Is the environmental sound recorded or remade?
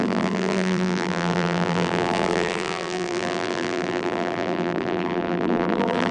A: remade